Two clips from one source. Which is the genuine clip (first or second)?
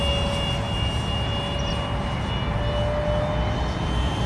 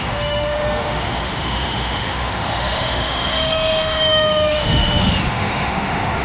first